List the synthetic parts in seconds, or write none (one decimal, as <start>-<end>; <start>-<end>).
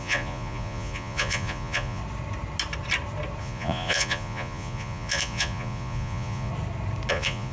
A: 0.0-2.0; 3.4-6.5; 7.1-7.5